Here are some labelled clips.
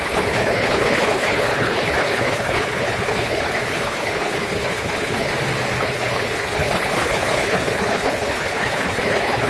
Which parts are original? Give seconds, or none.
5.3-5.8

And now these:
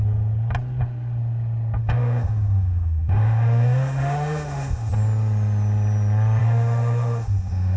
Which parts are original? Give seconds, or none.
0.0-1.8; 4.9-6.4